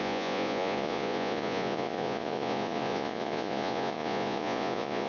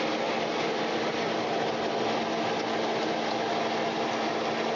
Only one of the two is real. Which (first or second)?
second